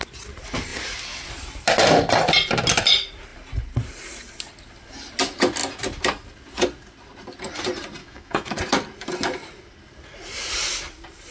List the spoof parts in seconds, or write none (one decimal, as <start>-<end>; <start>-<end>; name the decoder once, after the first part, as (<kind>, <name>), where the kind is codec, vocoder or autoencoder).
8.0-8.5 (autoencoder, DAC-VAE)

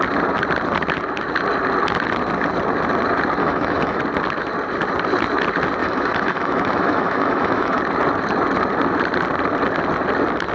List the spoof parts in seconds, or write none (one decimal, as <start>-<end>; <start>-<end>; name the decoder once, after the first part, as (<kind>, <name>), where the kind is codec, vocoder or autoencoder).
3.4-4.0 (autoencoder, DAC-VAE); 5.8-7.8

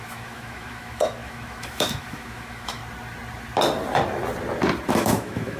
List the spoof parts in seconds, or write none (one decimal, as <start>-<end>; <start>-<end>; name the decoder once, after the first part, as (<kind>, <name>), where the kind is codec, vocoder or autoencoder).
0.0-2.8 (autoencoder, DAC-VAE); 4.9-5.6

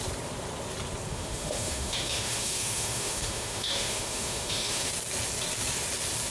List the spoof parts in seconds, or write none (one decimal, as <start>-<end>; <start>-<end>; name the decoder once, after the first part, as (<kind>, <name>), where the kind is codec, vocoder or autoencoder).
1.1-4.9 (autoencoder, DAC-VAE)

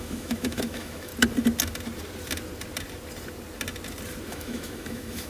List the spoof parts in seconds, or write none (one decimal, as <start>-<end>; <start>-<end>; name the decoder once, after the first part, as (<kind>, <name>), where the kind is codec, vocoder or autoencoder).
0.0-1.1 (autoencoder, DAC-VAE); 4.3-5.3

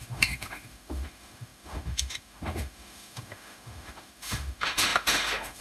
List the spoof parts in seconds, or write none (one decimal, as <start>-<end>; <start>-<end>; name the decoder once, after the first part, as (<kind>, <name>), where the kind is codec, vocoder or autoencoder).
0.0-5.6 (autoencoder, DAC-VAE)

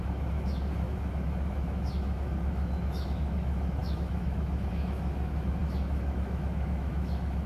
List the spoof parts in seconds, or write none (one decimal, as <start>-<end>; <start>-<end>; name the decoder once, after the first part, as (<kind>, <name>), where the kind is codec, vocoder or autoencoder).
0.0-7.5 (autoencoder, DAC-VAE)